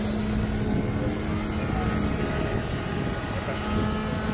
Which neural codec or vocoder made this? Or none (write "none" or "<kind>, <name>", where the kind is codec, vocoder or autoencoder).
none